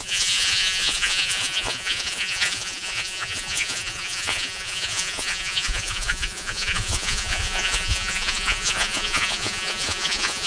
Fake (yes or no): yes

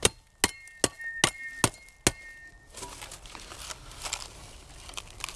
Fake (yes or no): no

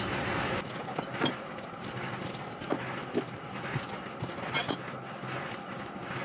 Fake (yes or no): no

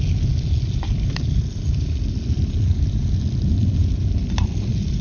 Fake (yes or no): no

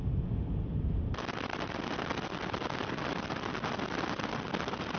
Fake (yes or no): no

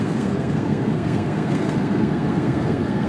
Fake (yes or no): yes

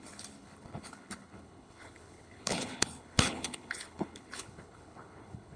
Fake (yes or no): yes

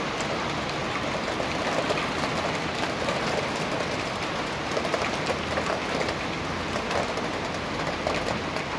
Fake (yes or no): no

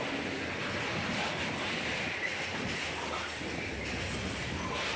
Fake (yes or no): no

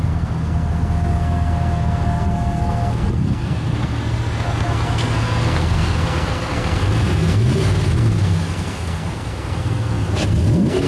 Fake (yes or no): yes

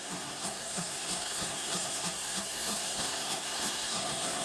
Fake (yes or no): yes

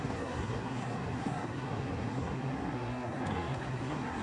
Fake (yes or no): yes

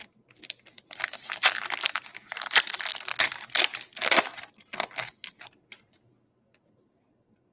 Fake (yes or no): no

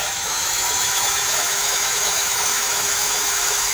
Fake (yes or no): yes